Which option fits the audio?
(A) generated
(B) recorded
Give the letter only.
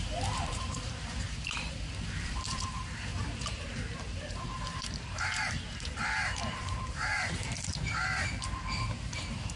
A